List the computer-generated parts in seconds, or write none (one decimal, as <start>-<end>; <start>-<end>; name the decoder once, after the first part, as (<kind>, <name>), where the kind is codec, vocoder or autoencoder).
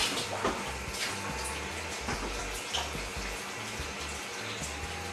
none